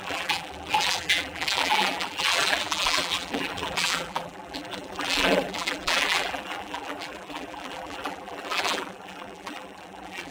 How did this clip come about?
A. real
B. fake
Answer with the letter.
B